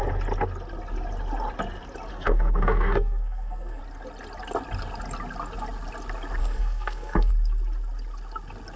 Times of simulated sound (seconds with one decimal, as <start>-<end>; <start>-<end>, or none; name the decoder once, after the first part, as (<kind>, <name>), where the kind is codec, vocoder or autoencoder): 2.1-3.8 (codec, SNAC); 6.4-7.3